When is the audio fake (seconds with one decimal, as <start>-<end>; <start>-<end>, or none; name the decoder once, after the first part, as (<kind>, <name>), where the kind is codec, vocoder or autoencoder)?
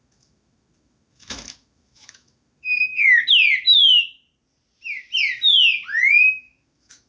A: 0.0-3.2 (autoencoder, DAC-VAE); 6.1-7.1